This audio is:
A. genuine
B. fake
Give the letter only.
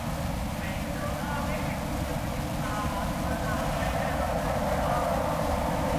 A